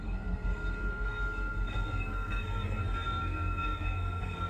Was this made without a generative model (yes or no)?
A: no